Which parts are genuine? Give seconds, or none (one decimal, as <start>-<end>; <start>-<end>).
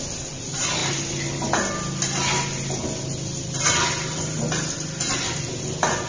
0.0-6.1